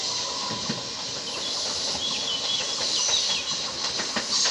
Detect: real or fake real